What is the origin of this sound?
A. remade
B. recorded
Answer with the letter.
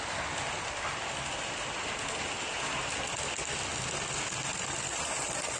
B